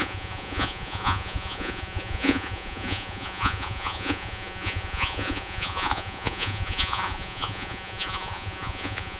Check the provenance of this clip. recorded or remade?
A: remade